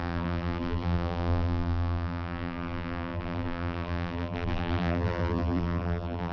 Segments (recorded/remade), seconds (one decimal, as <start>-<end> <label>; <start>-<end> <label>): 0.0-6.3 remade